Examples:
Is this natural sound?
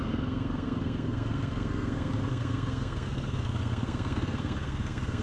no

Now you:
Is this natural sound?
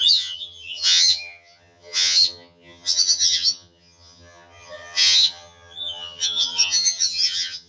no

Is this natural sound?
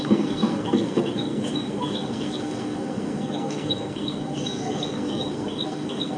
no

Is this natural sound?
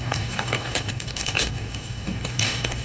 no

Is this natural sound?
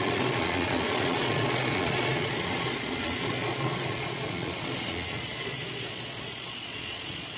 no